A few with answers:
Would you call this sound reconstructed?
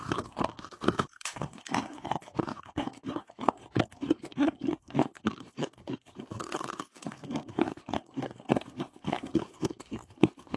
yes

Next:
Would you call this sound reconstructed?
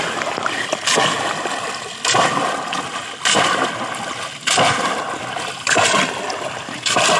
no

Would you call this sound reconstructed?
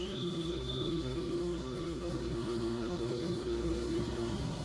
yes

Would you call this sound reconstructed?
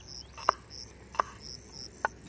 no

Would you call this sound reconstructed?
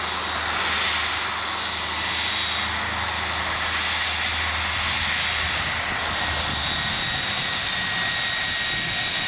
no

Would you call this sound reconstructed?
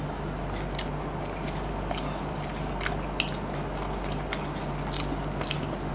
no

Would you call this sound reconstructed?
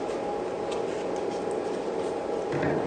no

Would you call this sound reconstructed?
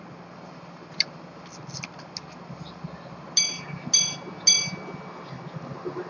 no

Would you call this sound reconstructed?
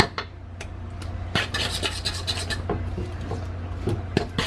no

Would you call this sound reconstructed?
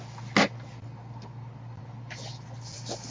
no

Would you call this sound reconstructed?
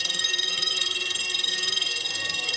yes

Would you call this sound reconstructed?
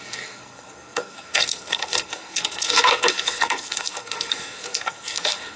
yes